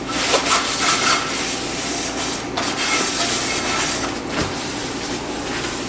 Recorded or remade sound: recorded